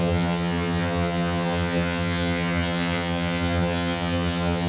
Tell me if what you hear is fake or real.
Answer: fake